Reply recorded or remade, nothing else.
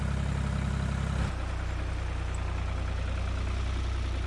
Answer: recorded